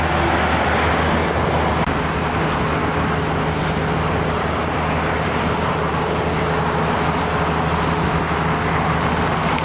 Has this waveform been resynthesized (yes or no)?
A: no